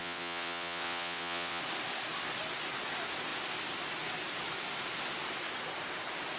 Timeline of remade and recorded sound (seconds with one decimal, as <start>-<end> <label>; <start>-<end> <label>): 0.0-1.6 remade; 1.6-6.4 recorded